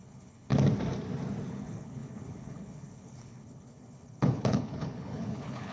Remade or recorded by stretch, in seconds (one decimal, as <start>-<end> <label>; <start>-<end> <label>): 0.0-0.5 remade; 0.5-1.5 recorded; 1.5-5.7 remade